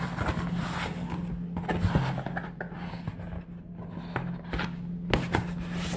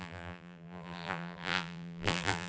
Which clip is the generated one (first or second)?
second